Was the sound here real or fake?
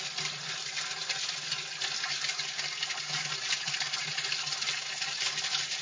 real